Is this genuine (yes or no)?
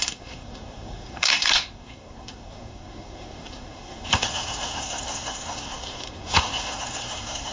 no